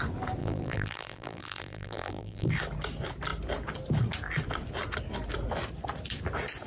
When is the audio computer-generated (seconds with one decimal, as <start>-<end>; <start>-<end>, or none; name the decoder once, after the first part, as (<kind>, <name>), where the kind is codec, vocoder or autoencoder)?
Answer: 0.4-2.5 (vocoder, BigVGAN v2)